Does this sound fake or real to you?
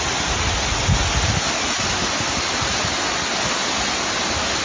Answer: real